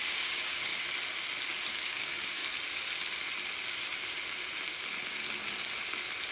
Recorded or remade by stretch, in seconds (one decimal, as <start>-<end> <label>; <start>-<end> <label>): 0.0-0.7 remade; 0.7-1.7 recorded; 1.7-2.4 remade; 2.4-6.3 recorded